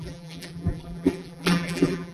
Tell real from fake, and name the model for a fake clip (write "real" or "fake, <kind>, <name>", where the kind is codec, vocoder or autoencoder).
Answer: fake, vocoder, BigVGAN v2